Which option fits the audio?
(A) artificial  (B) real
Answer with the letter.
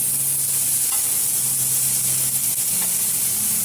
B